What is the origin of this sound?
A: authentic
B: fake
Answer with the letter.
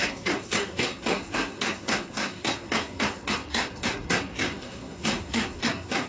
B